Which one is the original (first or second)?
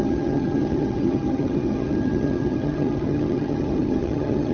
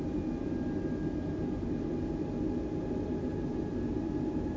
second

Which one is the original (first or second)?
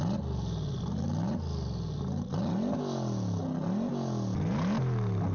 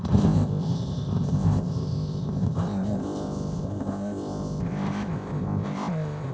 first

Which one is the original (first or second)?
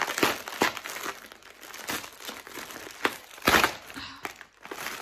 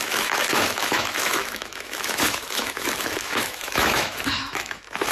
first